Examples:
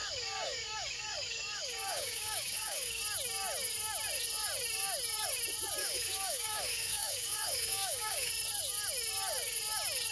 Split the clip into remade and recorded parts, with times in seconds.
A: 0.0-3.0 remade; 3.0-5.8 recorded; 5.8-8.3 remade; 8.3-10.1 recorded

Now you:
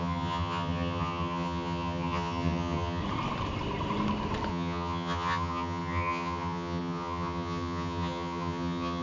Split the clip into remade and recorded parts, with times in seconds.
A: 0.0-3.0 remade; 3.0-4.5 recorded; 4.5-9.0 remade

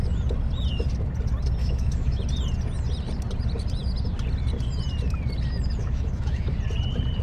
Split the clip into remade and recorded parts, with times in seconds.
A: 0.0-1.6 recorded; 1.6-2.2 remade; 2.2-5.8 recorded; 5.8-6.5 remade; 6.5-7.2 recorded

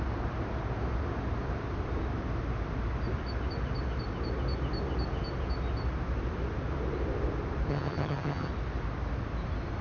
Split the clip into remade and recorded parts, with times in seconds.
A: 0.0-7.7 recorded; 7.7-8.5 remade; 8.5-9.8 recorded